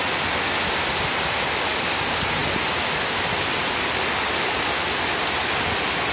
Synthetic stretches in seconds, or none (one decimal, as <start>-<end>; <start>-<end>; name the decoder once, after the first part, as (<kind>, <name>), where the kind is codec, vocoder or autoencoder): none